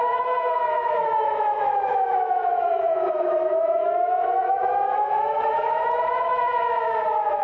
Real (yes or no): no